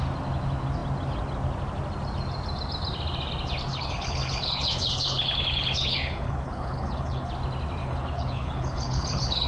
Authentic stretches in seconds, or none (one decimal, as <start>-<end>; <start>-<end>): 0.0-3.7; 7.3-7.8